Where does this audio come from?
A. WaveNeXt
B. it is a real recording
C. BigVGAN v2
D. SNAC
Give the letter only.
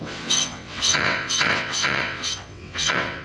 A